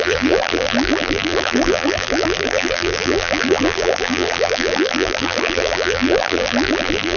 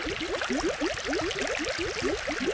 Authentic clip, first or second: second